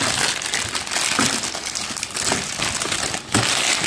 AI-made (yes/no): no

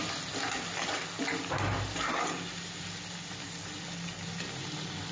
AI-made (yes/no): no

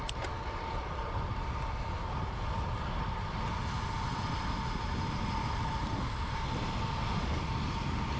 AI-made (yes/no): no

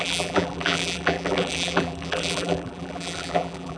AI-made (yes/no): yes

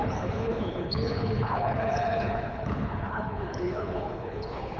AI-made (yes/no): yes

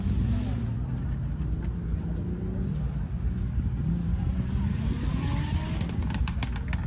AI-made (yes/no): no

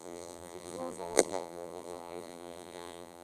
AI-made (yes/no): yes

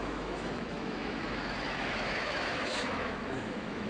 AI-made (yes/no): yes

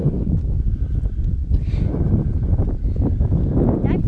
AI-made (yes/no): no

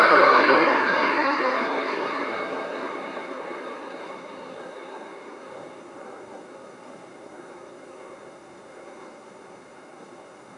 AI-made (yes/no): yes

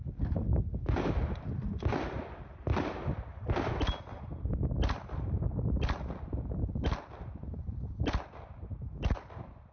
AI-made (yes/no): no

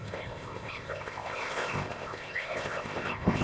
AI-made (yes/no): yes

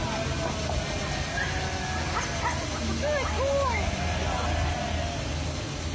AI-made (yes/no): no